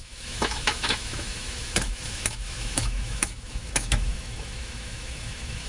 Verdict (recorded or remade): remade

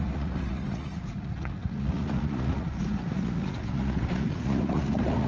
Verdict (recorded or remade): remade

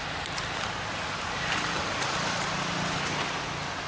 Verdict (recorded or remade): recorded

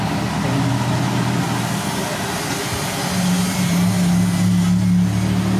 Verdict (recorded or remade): recorded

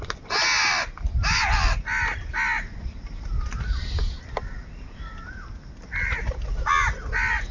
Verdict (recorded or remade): recorded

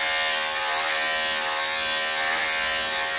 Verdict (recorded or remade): recorded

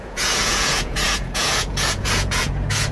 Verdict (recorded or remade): remade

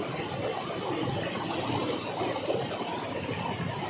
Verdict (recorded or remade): recorded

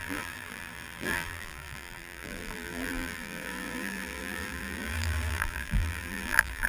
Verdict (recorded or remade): remade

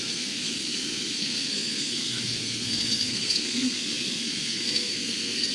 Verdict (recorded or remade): remade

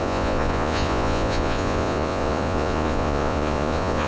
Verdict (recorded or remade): remade